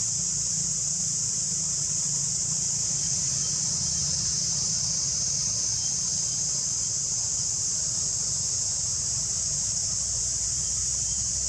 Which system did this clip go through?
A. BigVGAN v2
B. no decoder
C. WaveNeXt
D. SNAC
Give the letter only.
A